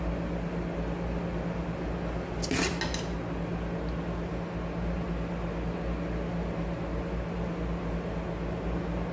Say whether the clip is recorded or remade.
recorded